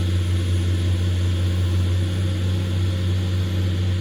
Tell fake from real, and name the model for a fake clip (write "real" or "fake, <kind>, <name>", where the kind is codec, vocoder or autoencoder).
real